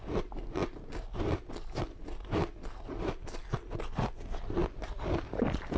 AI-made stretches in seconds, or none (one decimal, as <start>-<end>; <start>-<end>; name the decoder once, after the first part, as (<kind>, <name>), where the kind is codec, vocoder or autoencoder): none